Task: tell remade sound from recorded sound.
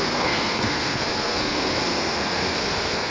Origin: remade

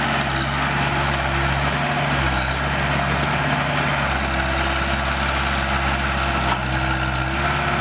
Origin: recorded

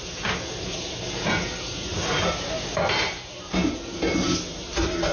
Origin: recorded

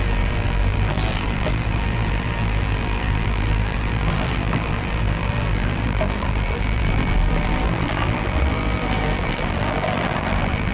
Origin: remade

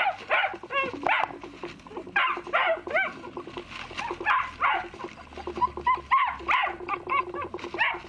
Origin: recorded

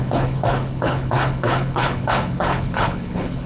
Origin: remade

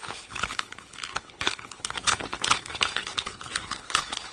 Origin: remade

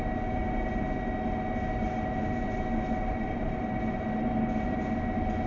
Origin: recorded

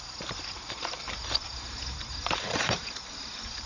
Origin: remade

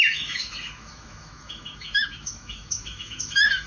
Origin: remade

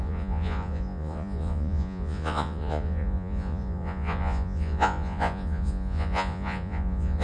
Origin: remade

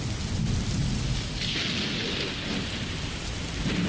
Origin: recorded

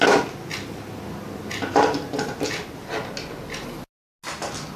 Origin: recorded